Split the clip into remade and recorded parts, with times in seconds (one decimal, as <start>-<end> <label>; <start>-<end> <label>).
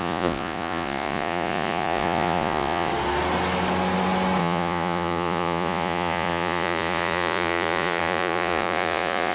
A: 0.0-2.9 remade; 2.9-4.4 recorded; 4.4-9.3 remade